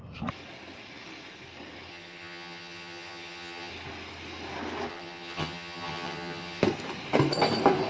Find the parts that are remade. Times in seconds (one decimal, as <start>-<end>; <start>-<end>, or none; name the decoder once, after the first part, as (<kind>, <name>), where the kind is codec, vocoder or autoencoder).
1.9-3.7 (vocoder, HiFi-GAN); 4.9-6.6